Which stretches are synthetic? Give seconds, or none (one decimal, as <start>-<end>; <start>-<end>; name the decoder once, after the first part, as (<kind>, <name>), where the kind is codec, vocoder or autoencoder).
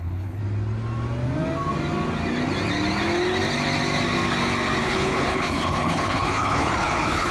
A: 0.0-0.4 (codec, HILCodec); 4.8-7.3